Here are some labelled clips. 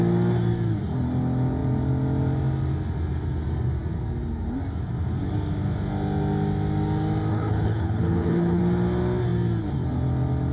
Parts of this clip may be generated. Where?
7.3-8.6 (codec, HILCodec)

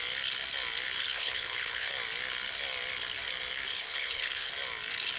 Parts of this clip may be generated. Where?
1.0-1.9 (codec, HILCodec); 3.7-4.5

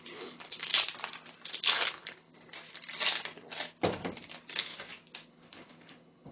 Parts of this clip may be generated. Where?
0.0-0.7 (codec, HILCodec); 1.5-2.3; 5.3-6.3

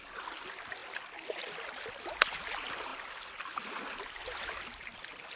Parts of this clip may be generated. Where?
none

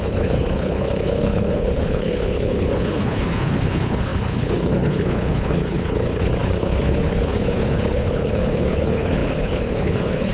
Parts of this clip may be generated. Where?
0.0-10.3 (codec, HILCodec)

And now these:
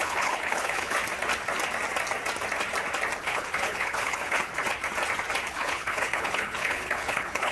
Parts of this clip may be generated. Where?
0.0-1.0 (codec, HILCodec); 3.2-4.5; 5.5-7.5

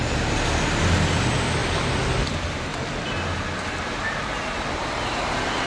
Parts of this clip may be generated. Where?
none